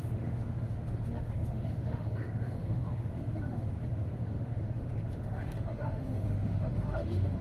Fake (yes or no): yes